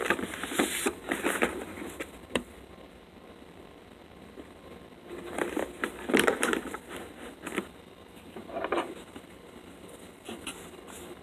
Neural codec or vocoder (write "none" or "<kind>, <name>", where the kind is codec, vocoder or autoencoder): vocoder, BigVGAN v2